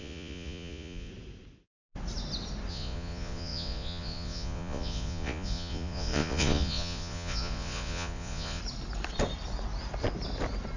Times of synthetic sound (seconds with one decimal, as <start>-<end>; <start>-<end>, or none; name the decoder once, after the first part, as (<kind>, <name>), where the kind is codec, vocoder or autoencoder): 0.0-1.1 (vocoder, Vocos); 2.7-8.6